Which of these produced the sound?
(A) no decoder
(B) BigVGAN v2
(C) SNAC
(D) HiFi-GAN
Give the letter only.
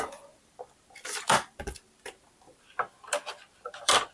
B